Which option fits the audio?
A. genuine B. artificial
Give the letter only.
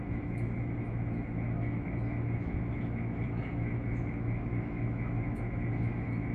B